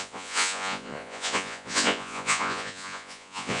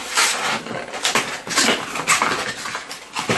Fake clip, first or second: first